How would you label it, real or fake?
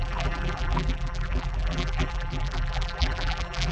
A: fake